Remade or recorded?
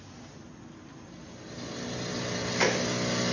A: recorded